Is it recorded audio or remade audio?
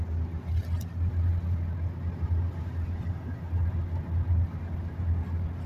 recorded